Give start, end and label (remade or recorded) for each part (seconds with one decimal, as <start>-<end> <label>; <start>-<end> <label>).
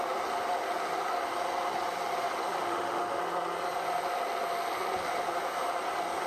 0.0-2.6 recorded; 2.6-3.2 remade; 3.2-6.3 recorded